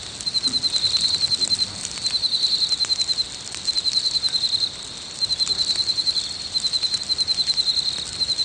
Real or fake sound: real